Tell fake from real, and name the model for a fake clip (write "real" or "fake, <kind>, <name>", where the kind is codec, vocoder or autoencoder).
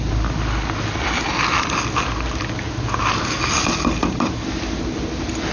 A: real